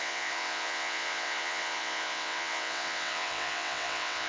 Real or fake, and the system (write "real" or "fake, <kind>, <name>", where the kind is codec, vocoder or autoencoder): fake, vocoder, WaveNeXt